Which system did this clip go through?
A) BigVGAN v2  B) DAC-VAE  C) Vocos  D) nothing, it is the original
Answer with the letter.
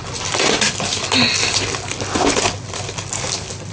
D